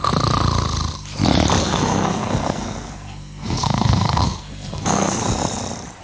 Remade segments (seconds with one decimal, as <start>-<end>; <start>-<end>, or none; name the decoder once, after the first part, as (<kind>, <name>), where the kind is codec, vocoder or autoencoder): 1.6-5.2 (codec, SNAC)